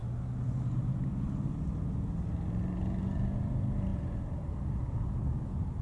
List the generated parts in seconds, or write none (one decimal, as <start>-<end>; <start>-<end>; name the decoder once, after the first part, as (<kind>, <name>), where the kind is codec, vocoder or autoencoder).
none